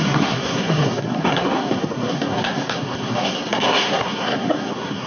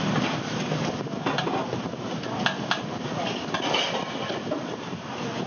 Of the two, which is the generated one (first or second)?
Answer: first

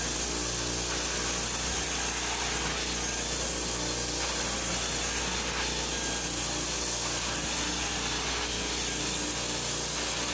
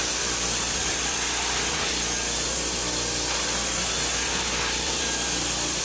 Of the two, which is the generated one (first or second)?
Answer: second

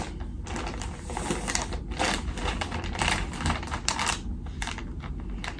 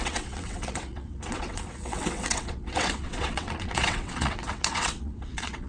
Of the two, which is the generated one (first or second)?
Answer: second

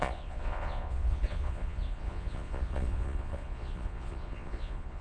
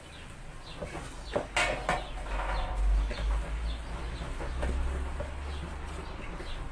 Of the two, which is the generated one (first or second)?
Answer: first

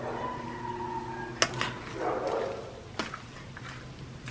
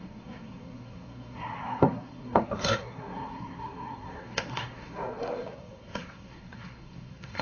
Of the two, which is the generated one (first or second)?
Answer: second